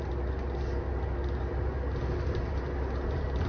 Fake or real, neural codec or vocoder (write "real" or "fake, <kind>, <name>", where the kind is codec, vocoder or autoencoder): real